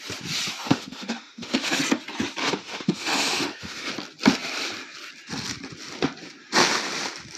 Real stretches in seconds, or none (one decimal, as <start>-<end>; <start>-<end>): 0.0-0.6; 1.8-2.4; 3.9-7.4